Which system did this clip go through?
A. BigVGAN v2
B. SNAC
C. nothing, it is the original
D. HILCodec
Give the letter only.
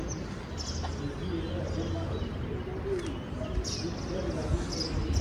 C